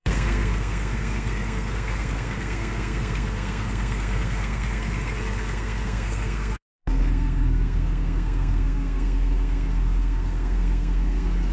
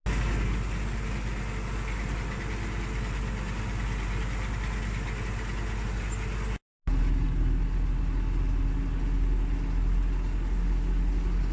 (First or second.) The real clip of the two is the second